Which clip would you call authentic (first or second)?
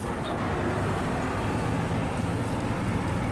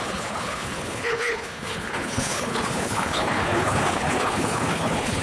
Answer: first